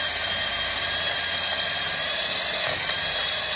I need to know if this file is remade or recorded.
recorded